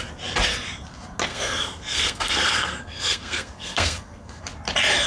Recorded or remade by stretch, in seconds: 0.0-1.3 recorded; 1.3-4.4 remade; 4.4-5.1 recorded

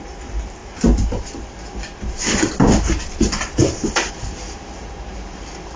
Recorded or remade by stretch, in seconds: 0.0-5.8 recorded